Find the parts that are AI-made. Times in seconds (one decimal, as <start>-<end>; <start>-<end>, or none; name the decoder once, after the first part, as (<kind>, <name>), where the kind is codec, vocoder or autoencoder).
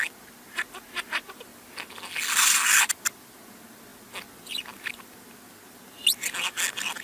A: none